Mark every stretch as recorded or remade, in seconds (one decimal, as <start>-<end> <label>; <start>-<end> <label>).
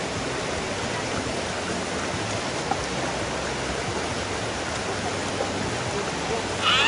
0.0-6.9 recorded